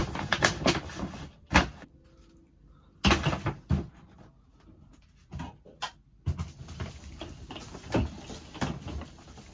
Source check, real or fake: real